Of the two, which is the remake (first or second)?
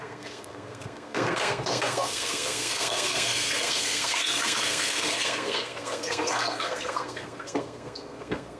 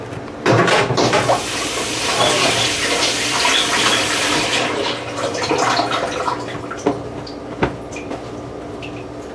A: first